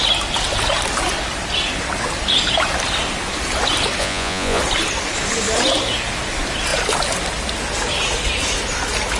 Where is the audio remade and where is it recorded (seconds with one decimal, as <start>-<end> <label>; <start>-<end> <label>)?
0.0-4.0 recorded; 4.0-4.6 remade; 4.6-9.2 recorded